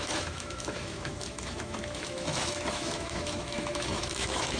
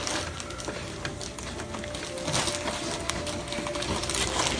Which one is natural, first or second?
second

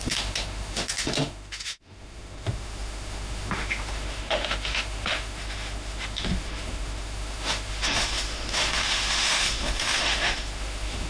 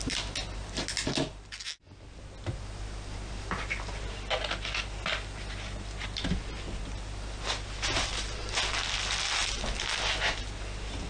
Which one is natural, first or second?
second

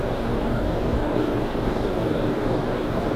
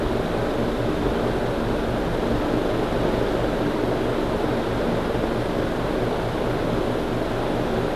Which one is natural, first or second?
second